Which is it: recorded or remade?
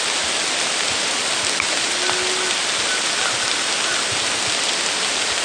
recorded